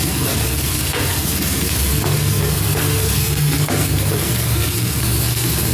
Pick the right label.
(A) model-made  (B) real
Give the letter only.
A